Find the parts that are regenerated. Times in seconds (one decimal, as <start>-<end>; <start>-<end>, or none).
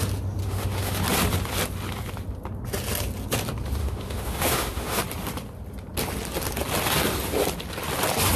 0.4-1.0; 3.8-5.0